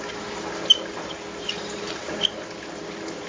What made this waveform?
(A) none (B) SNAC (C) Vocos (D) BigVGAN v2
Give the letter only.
A